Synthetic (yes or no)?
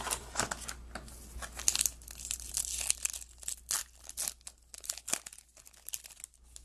no